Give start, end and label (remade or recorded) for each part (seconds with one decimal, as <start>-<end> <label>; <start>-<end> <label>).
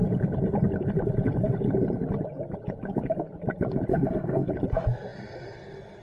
0.0-3.9 recorded; 3.9-4.5 remade; 4.5-6.0 recorded